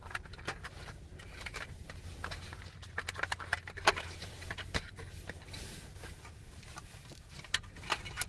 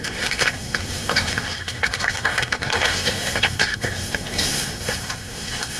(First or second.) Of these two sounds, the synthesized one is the second